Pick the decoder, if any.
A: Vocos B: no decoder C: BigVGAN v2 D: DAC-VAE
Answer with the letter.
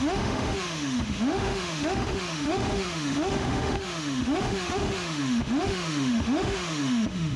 D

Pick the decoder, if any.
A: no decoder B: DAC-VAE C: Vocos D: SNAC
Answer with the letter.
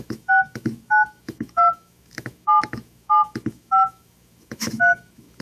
B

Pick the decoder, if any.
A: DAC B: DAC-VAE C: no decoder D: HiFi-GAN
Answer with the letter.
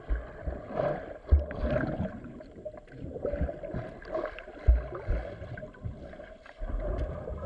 C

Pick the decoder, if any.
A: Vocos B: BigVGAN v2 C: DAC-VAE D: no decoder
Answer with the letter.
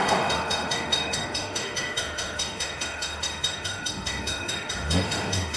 C